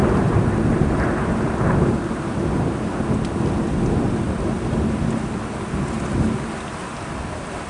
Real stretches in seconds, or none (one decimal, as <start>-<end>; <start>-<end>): 2.2-7.7